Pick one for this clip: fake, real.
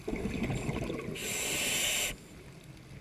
real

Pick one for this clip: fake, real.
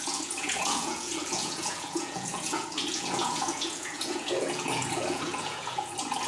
fake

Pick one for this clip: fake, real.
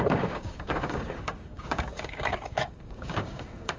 fake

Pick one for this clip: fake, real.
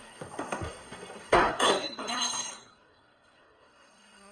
fake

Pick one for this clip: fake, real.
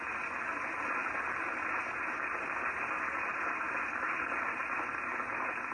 real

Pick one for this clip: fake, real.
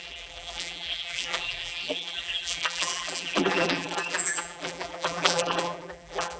fake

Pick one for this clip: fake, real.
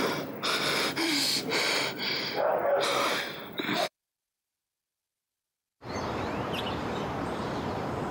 fake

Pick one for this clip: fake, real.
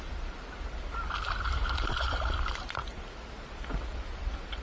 real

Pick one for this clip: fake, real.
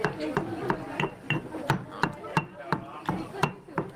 real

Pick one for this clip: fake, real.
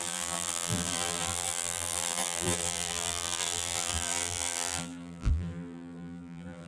fake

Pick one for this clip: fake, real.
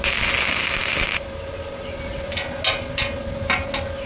real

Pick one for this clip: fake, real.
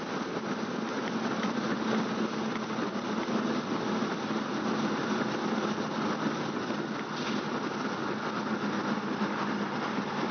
real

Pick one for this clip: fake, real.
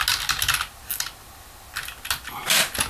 real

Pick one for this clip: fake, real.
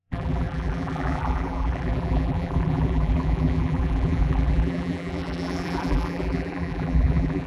fake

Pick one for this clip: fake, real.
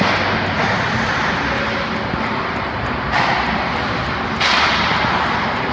real